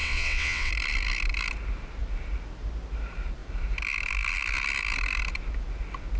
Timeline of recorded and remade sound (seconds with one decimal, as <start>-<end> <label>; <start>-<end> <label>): 0.0-0.7 remade; 0.7-6.2 recorded